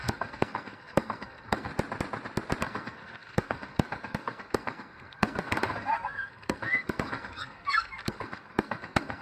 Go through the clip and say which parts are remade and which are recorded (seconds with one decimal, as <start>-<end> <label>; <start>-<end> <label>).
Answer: 0.0-1.7 remade; 1.7-2.6 recorded; 2.6-9.2 remade